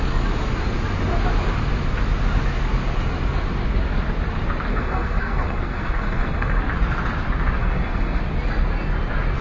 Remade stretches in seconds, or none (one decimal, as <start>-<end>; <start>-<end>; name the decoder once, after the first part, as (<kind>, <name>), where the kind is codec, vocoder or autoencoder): 4.7-6.6 (codec, SNAC); 7.6-8.2